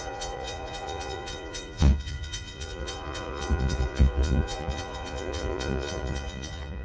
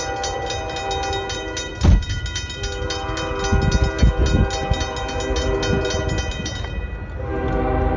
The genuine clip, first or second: second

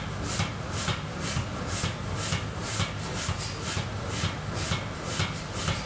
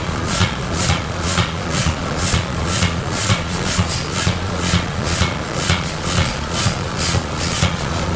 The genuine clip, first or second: first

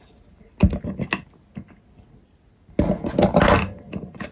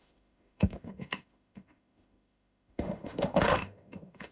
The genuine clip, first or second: first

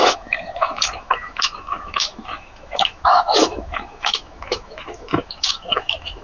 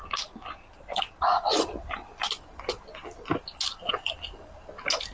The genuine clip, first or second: second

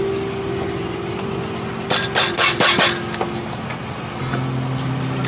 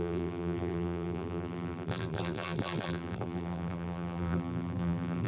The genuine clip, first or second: first